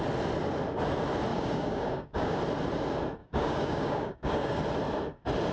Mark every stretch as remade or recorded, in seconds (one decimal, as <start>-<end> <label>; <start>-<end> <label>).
0.0-1.3 recorded; 1.3-2.4 remade; 2.4-3.2 recorded; 3.2-4.6 remade; 4.6-5.5 recorded